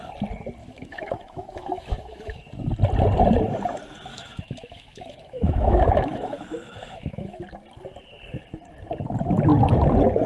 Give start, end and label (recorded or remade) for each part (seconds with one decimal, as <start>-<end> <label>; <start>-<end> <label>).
0.0-0.6 recorded; 0.6-2.4 remade; 2.4-4.1 recorded; 4.1-7.4 remade; 7.4-10.3 recorded